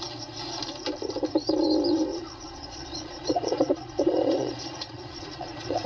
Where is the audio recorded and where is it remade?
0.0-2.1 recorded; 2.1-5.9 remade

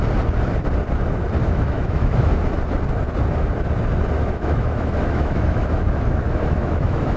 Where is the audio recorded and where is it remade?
0.0-1.4 recorded; 1.4-2.4 remade; 2.4-4.2 recorded; 4.2-7.2 remade